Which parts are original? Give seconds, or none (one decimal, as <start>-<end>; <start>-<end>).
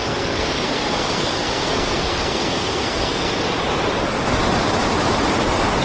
3.4-5.8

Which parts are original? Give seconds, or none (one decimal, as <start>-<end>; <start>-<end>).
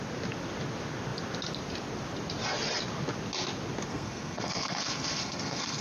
0.0-3.9